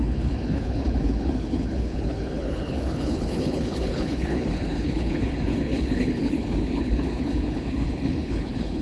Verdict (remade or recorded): remade